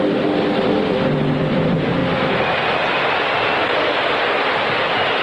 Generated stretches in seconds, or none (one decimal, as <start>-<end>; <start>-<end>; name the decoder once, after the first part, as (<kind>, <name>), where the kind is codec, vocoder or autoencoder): none